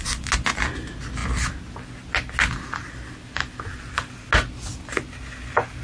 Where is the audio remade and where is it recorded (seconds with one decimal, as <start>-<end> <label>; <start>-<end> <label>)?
0.0-5.8 recorded